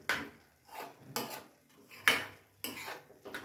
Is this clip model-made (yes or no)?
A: no